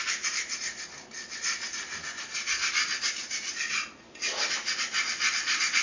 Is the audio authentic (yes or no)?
yes